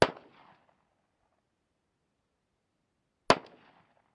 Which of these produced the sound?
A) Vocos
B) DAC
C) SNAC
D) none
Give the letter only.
D